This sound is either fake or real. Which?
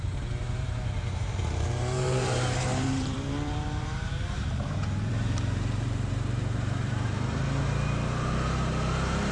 fake